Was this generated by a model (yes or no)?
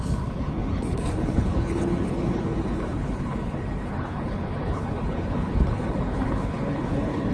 yes